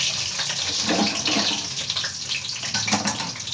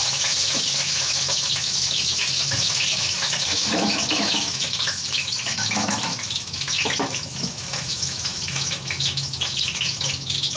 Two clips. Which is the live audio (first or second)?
first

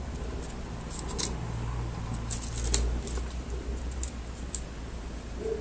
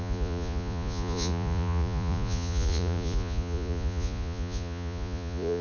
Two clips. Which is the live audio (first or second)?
first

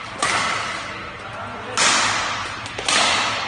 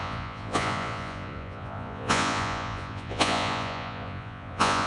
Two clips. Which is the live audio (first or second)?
first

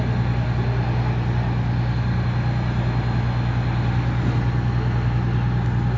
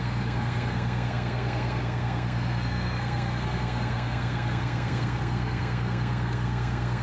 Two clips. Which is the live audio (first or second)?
first